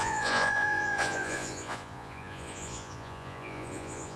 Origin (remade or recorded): remade